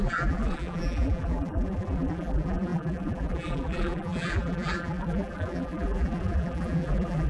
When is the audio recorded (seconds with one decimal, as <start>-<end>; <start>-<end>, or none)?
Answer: none